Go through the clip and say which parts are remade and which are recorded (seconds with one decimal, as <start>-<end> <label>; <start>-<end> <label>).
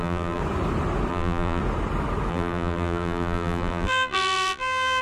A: 0.0-0.4 remade; 0.4-1.1 recorded; 1.1-1.6 remade; 1.6-2.3 recorded; 2.3-5.0 remade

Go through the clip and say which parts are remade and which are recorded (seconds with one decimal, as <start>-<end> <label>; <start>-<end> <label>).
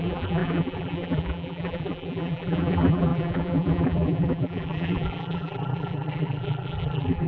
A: 0.0-7.3 remade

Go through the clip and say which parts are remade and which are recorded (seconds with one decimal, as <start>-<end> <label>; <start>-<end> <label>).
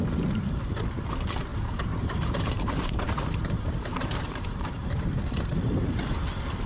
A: 0.0-1.5 recorded; 1.5-5.5 remade; 5.5-6.7 recorded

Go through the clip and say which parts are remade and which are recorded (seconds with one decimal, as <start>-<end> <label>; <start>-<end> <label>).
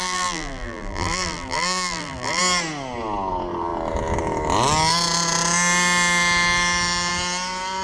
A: 0.0-2.4 remade; 2.4-7.8 recorded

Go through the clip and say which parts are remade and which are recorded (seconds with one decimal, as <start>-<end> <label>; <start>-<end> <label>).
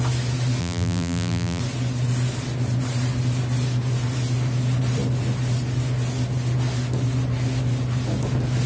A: 0.0-0.6 recorded; 0.6-1.6 remade; 1.6-8.7 recorded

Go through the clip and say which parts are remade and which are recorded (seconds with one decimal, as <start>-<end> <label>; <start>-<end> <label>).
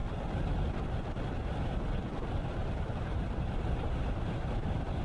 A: 0.0-3.0 recorded; 3.0-5.0 remade